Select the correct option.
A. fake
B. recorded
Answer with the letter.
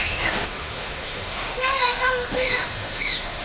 A